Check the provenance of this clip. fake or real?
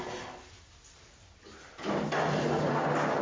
real